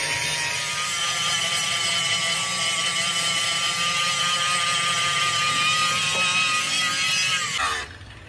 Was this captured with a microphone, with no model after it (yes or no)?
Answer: yes